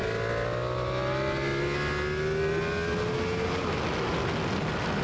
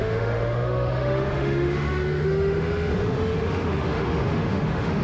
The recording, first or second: first